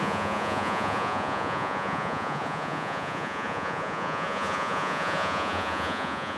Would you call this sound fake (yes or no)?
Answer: yes